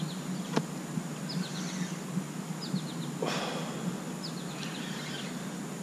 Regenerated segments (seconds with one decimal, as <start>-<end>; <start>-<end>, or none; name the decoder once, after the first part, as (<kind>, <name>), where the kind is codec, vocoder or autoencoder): none